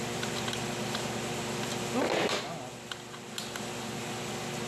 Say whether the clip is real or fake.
real